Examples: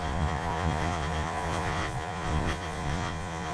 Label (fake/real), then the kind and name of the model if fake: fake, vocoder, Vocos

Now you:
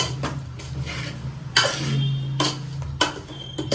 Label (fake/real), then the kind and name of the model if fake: real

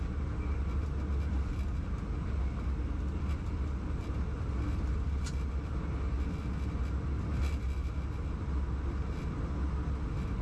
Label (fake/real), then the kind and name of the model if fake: real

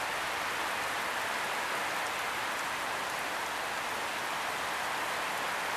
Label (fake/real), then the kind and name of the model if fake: real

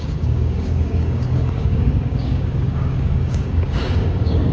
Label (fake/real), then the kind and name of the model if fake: fake, codec, DAC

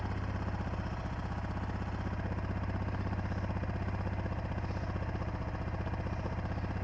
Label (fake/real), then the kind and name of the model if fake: real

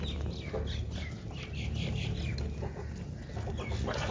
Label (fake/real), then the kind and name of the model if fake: real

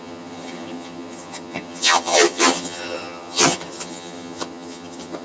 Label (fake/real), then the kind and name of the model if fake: fake, vocoder, HiFi-GAN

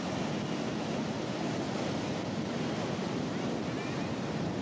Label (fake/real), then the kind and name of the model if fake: real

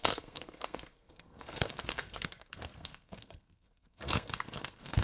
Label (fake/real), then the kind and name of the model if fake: fake, codec, SNAC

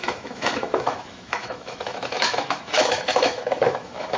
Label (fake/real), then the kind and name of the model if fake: fake, autoencoder, DAC-VAE